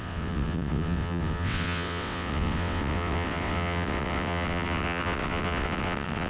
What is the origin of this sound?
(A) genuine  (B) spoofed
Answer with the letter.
B